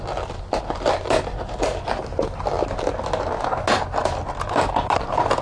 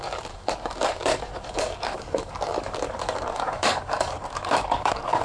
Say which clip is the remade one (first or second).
second